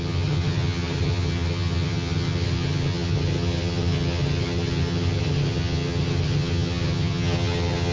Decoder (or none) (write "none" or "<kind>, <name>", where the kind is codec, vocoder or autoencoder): vocoder, HiFi-GAN